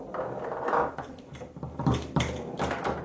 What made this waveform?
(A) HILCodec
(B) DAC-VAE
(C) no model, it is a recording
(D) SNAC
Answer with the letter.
C